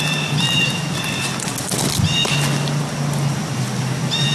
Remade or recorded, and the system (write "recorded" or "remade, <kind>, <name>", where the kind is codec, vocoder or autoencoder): recorded